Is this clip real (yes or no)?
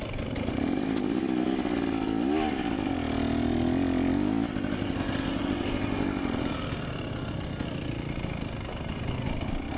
yes